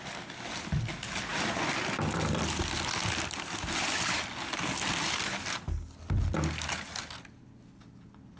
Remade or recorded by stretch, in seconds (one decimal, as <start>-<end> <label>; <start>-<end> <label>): 0.0-8.4 recorded